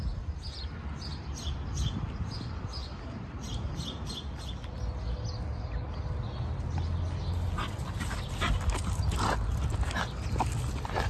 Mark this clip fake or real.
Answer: real